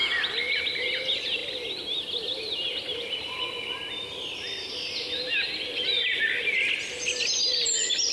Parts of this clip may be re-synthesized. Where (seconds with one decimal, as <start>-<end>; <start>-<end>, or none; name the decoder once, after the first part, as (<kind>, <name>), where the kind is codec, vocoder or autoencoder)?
none